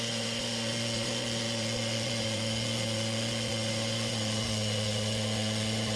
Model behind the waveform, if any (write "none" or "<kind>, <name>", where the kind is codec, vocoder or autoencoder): vocoder, Vocos